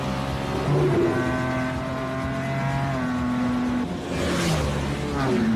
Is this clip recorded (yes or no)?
yes